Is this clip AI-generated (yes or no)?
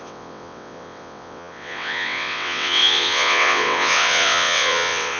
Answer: yes